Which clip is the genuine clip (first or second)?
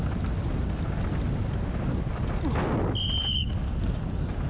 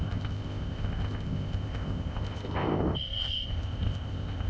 first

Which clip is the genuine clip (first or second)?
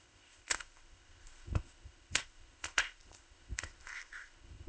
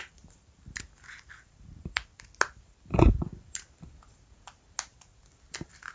second